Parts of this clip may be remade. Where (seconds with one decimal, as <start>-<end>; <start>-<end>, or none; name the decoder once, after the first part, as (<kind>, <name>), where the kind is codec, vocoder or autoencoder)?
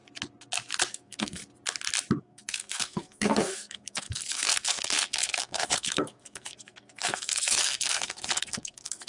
0.9-1.4 (codec, SNAC); 2.2-9.1